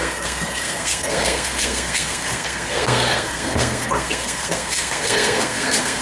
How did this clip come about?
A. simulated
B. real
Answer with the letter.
A